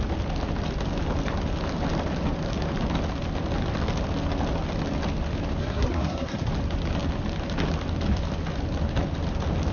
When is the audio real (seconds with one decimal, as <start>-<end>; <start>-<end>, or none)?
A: 0.0-5.6; 6.5-9.7